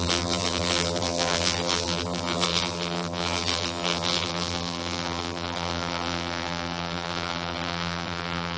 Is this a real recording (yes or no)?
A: no